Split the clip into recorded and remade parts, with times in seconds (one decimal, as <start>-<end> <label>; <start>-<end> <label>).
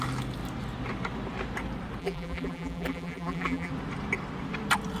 0.0-2.0 recorded; 2.0-3.7 remade; 3.7-5.0 recorded